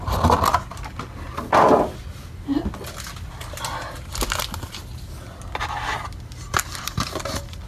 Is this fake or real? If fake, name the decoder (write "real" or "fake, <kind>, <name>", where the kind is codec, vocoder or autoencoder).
real